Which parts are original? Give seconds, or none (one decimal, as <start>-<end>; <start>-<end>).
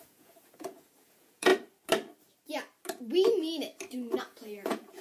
1.5-4.2